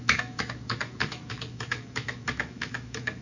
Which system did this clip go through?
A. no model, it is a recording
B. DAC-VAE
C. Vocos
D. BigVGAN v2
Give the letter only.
B